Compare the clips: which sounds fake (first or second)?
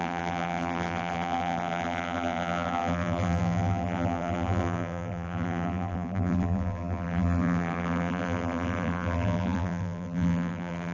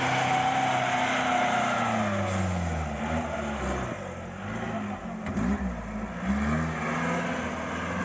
first